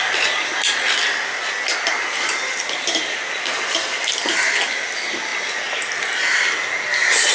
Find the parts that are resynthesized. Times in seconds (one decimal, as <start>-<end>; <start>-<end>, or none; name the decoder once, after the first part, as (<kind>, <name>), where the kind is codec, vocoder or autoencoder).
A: none